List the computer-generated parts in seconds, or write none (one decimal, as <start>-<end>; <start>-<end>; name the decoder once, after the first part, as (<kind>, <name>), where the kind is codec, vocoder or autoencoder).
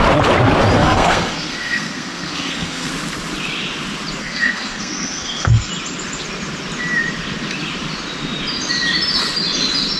0.8-2.9 (codec, SNAC); 4.2-5.7